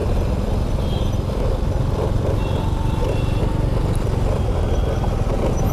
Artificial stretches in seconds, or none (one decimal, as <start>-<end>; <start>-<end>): 0.0-3.4